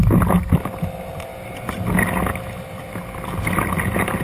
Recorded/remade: recorded